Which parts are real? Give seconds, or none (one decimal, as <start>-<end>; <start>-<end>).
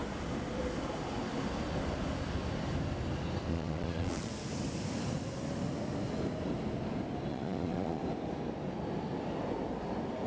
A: 0.0-3.5; 4.3-7.3; 8.0-10.3